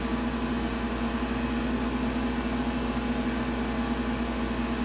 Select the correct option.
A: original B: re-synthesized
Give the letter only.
A